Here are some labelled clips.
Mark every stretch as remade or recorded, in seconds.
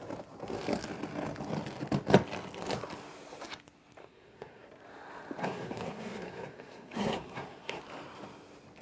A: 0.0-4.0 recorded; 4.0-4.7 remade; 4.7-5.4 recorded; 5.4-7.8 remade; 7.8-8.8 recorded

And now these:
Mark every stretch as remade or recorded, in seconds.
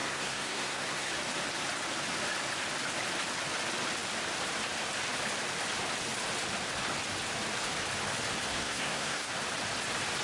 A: 0.0-1.1 remade; 1.1-8.5 recorded; 8.5-9.3 remade; 9.3-10.2 recorded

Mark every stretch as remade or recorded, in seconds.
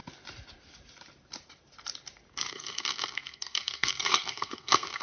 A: 0.0-2.5 recorded; 2.5-5.0 remade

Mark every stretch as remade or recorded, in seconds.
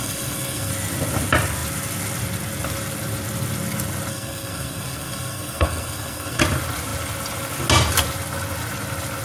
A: 0.0-0.7 remade; 0.7-4.1 recorded; 4.1-6.4 remade; 6.4-9.2 recorded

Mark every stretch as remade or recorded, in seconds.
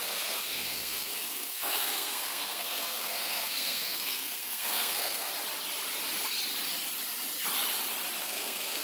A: 0.0-5.3 remade; 5.3-8.2 recorded; 8.2-8.8 remade